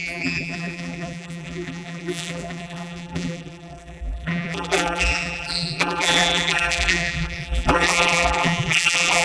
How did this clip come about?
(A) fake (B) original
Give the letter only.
A